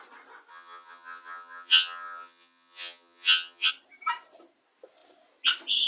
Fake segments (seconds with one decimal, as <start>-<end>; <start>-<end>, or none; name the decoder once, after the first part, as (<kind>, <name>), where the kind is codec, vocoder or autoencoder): 0.5-3.7 (vocoder, HiFi-GAN)